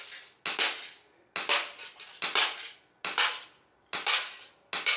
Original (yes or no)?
yes